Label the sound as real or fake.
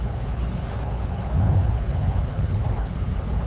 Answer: fake